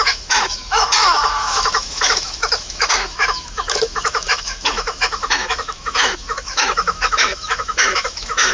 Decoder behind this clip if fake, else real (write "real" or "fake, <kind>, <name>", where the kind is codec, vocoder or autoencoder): fake, autoencoder, DAC-VAE